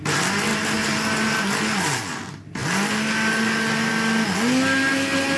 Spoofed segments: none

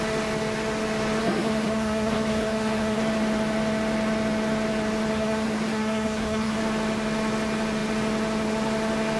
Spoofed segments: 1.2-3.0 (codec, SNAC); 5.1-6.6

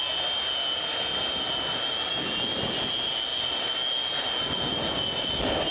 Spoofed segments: none

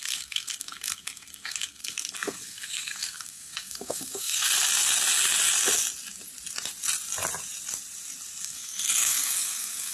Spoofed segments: 0.0-4.5 (codec, SNAC); 8.4-9.9

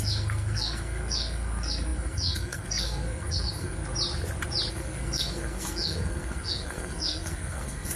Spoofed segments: 0.0-3.8 (codec, SNAC); 4.7-8.0